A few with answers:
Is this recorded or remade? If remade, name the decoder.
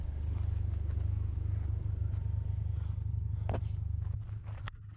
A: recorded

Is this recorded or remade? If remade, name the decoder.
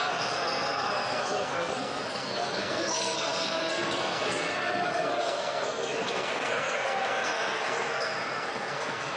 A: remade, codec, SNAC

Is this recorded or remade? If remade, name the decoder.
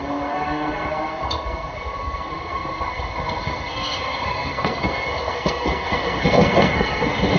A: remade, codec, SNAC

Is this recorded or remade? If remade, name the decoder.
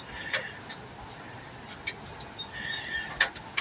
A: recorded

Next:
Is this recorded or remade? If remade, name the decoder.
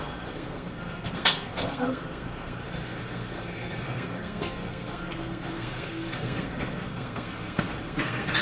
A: remade, codec, SNAC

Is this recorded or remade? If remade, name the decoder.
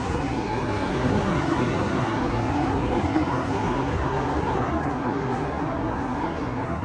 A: remade, codec, SNAC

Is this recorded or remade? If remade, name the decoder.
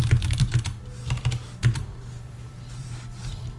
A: recorded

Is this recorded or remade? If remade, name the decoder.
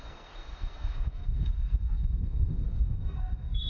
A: remade, codec, SNAC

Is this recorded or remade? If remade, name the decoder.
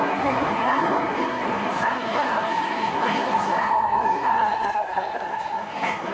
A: remade, codec, SNAC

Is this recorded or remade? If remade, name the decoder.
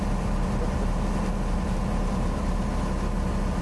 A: recorded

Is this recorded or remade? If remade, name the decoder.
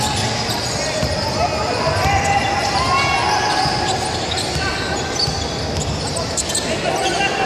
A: recorded